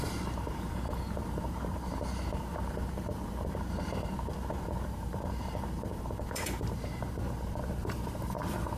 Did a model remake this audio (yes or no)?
yes